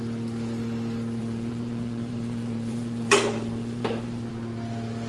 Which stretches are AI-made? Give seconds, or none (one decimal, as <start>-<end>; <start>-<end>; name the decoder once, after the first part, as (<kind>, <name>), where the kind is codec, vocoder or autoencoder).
1.2-4.3 (vocoder, Vocos)